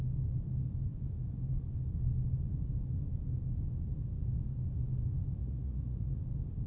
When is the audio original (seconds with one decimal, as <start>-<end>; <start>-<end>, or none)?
0.0-5.4; 6.2-6.7